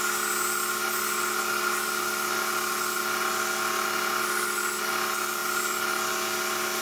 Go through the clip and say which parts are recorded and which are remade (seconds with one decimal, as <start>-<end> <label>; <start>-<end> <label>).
0.0-6.8 recorded